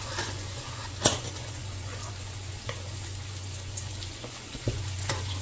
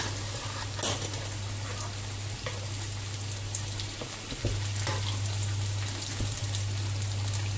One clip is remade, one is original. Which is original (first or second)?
second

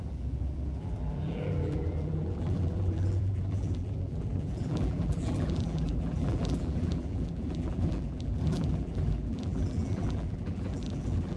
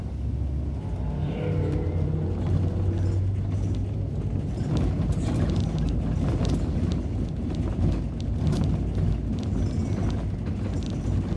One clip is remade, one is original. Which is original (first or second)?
second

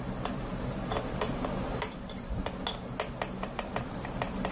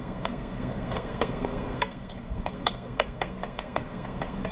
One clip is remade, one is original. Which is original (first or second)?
first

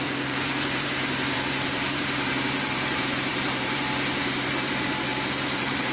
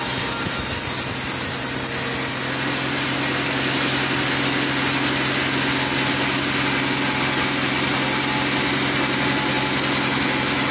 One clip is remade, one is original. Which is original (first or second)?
second